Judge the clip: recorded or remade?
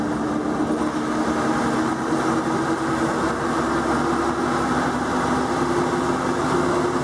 recorded